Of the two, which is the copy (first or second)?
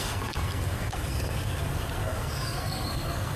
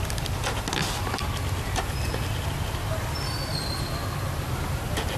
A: first